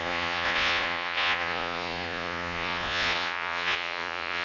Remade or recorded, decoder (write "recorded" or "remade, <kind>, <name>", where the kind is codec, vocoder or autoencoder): remade, vocoder, Vocos